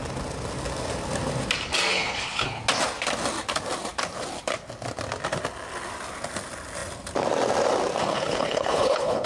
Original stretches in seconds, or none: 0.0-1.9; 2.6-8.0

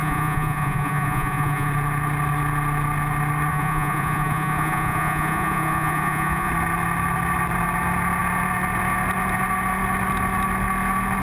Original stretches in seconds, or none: 1.7-3.5; 6.5-11.2

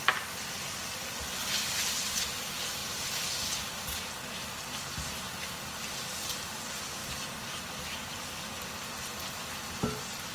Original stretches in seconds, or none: 0.0-10.3